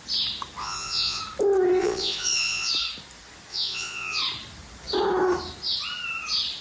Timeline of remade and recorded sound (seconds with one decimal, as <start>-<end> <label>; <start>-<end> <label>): 0.0-0.6 recorded; 0.6-1.2 remade; 1.2-1.8 recorded; 1.8-2.7 remade; 2.7-3.5 recorded; 3.5-4.2 remade; 4.2-6.6 recorded